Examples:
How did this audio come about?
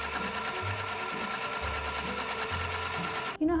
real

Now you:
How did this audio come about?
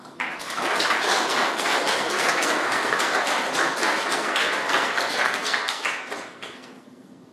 fake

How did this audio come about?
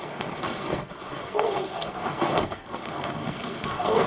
fake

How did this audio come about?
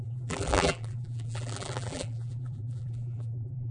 fake